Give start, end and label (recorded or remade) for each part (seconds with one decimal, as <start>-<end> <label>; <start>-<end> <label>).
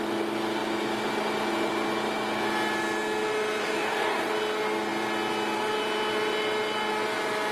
0.0-3.6 recorded; 3.6-4.3 remade; 4.3-7.5 recorded